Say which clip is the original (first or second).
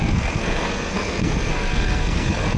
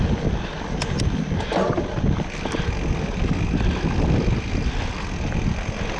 second